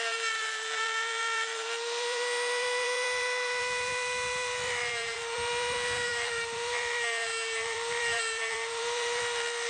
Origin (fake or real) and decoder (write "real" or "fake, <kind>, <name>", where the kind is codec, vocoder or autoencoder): fake, vocoder, BigVGAN v2